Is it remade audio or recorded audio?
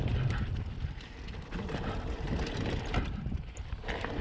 recorded